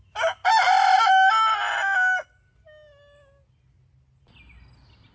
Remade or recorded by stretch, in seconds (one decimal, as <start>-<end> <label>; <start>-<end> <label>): 0.0-5.1 recorded